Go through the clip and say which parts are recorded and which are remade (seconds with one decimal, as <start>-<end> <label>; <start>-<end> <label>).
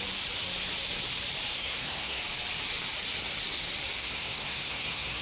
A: 0.0-1.5 recorded; 1.5-2.2 remade; 2.2-4.0 recorded; 4.0-5.2 remade